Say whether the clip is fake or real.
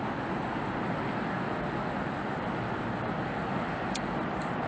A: real